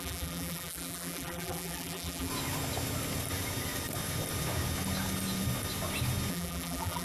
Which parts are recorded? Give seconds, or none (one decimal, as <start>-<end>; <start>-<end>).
2.3-6.3